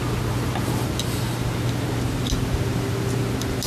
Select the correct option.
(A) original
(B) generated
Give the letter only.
A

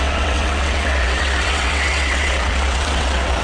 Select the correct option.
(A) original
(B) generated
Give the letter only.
B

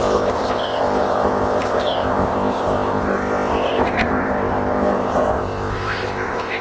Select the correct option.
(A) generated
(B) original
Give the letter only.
A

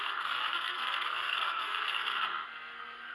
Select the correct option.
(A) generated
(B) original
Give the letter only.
A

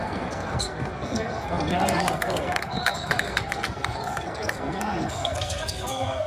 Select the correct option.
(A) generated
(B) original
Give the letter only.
A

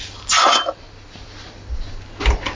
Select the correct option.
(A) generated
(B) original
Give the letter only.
B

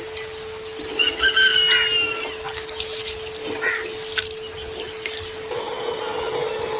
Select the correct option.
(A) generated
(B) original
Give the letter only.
B